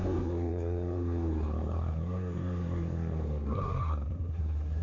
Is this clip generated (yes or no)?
yes